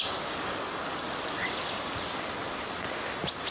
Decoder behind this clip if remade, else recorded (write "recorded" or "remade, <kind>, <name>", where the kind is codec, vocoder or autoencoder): recorded